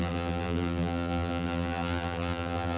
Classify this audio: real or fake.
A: fake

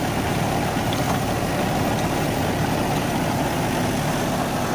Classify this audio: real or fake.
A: real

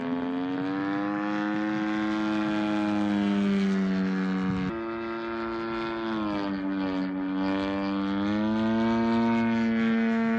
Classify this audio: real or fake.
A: real